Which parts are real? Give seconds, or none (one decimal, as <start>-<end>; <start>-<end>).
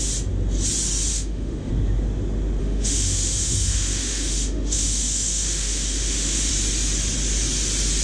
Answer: 0.0-1.1; 1.7-2.6; 6.5-8.0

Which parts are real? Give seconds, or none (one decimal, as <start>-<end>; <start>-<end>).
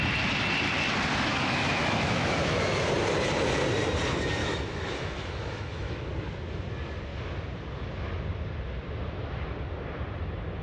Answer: 0.0-1.3; 2.9-4.4; 6.0-10.6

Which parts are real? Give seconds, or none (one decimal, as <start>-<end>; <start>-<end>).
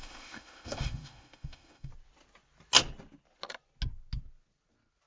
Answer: 1.9-5.1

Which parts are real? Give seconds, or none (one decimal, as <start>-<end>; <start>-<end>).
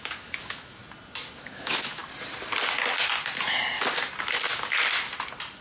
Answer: 0.8-1.4; 2.0-5.6